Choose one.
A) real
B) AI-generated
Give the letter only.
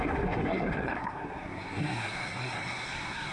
B